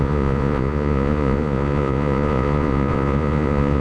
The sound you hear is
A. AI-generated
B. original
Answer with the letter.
A